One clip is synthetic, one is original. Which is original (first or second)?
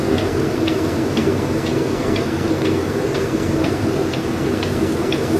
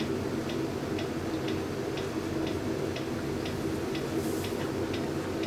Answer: second